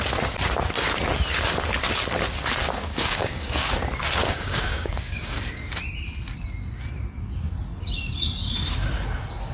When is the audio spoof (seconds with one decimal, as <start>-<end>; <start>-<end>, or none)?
2.6-3.7; 4.2-5.4